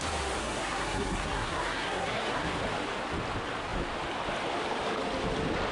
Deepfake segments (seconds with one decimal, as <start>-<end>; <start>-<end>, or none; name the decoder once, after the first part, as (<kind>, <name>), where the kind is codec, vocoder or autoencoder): 0.4-2.5 (codec, SNAC)